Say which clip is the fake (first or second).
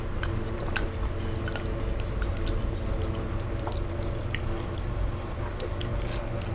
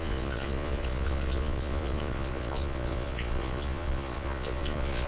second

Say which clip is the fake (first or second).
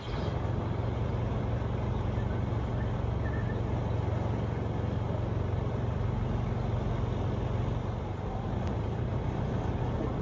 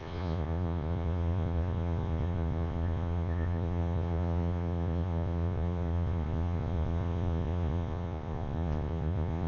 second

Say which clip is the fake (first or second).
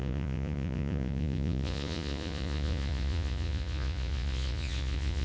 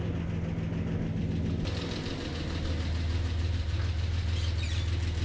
first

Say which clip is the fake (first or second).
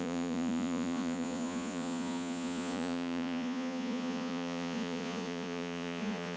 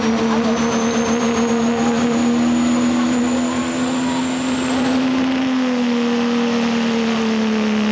first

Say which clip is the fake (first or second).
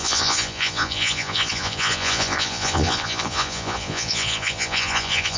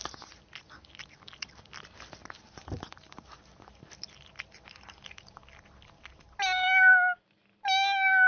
first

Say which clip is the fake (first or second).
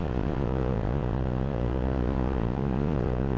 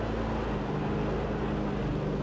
first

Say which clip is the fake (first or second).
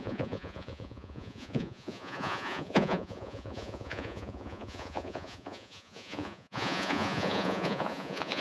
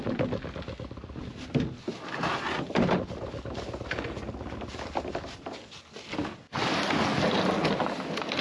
first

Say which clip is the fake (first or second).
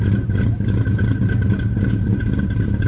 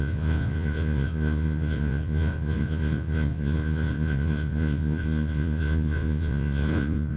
second